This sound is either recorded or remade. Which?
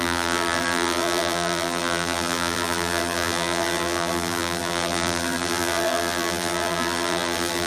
remade